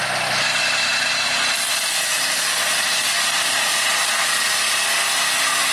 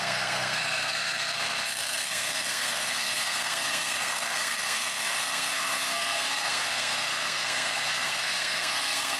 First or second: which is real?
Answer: first